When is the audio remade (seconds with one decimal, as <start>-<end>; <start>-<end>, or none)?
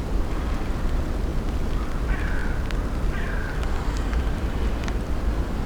none